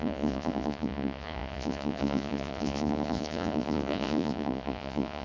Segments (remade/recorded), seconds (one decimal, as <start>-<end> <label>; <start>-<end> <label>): 0.0-5.2 remade